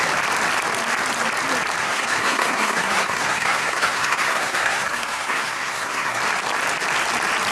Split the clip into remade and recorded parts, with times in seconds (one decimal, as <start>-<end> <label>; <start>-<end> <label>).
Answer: 0.0-1.8 recorded; 1.8-6.2 remade; 6.2-7.5 recorded

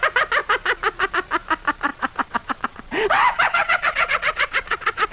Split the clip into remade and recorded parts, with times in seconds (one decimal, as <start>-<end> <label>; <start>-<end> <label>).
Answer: 0.0-1.9 recorded; 1.9-5.1 remade

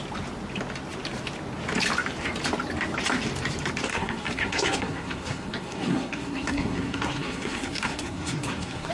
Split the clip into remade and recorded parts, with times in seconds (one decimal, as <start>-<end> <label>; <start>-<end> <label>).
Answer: 0.0-3.9 recorded; 3.9-8.9 remade

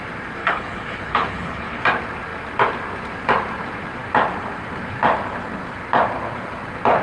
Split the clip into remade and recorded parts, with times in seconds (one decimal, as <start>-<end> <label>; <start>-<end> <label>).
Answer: 0.0-0.4 recorded; 0.4-1.8 remade; 1.8-7.0 recorded

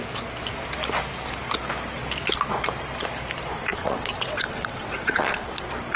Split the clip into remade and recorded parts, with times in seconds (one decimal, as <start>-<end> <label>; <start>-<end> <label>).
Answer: 0.0-3.7 recorded; 3.7-5.5 remade; 5.5-6.0 recorded